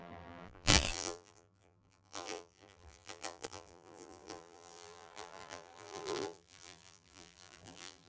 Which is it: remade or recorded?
remade